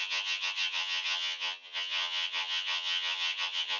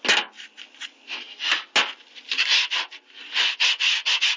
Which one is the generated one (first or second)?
first